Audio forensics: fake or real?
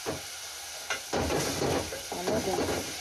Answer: real